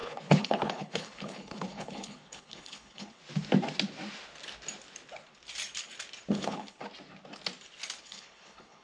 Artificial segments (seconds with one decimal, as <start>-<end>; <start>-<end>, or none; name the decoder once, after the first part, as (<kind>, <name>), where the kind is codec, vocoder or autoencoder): 0.0-3.2 (codec, HILCodec); 6.3-6.8; 8.0-8.8